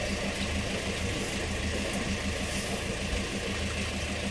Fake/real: real